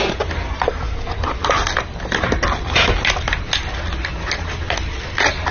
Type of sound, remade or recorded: recorded